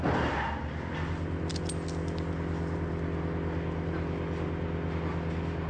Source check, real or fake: real